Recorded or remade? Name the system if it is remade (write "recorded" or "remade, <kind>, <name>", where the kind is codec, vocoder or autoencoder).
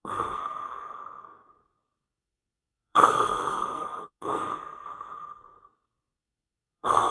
remade, codec, SNAC